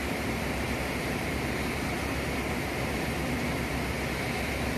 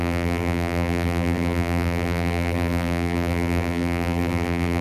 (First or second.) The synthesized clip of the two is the second